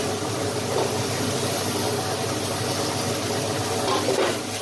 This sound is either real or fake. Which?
real